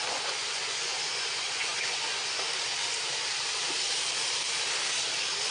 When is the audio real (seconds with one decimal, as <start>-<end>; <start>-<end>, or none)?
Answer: 2.2-5.5